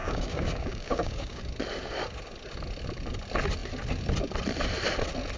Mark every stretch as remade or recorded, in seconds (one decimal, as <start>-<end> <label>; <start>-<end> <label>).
0.0-1.4 remade; 1.4-5.4 recorded